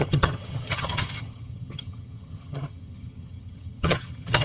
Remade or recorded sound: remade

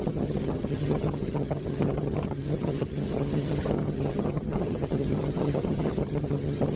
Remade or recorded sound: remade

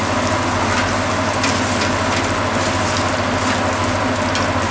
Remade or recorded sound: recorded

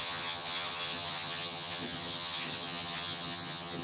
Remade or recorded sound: remade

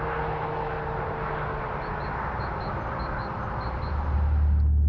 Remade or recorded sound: recorded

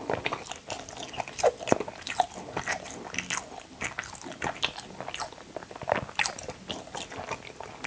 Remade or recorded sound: recorded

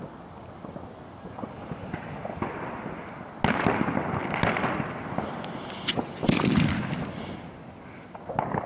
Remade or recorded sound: recorded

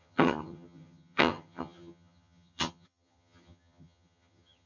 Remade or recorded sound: remade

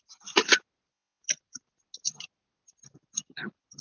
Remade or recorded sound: recorded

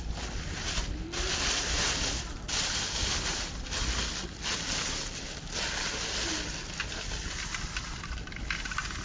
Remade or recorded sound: recorded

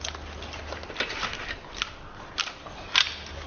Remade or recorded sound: recorded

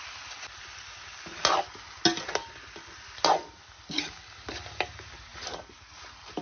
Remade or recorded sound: recorded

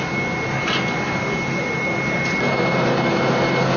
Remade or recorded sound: recorded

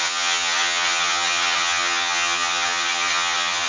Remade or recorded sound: remade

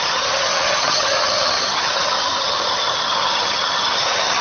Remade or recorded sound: remade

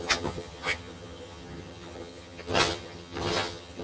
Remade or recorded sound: remade